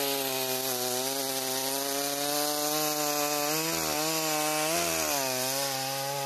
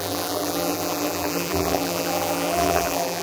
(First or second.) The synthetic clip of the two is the second